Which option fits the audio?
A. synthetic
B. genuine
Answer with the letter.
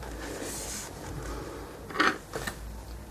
B